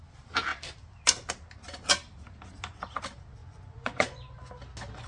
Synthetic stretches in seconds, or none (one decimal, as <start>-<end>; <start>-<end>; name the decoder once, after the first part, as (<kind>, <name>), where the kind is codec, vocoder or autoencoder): 3.4-4.4 (vocoder, Vocos)